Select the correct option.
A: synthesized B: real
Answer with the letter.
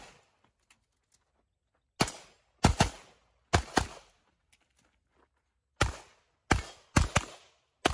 B